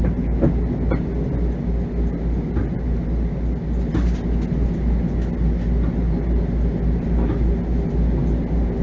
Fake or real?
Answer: real